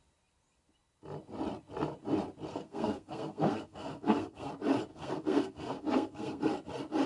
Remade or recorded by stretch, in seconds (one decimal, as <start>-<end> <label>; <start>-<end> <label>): 0.0-2.5 recorded; 2.5-4.5 remade; 4.5-4.9 recorded; 4.9-6.5 remade; 6.5-7.1 recorded